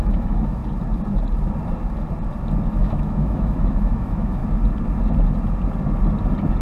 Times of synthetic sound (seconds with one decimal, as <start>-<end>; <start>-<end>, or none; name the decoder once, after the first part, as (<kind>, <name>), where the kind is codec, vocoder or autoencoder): 0.0-0.6 (autoencoder, DAC-VAE); 2.7-4.4